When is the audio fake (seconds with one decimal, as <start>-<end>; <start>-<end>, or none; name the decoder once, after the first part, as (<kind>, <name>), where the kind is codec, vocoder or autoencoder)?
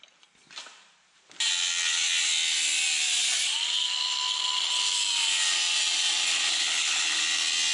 6.5-7.2 (codec, HILCodec)